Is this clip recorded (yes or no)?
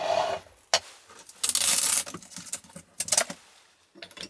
yes